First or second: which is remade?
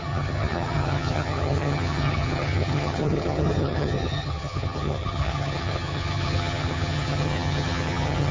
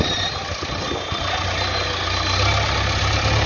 first